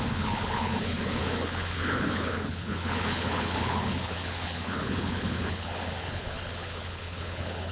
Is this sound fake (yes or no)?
yes